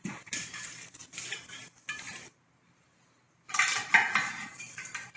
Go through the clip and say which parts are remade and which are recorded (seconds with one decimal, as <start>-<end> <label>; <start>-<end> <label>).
0.0-1.0 remade; 1.0-4.1 recorded; 4.1-5.2 remade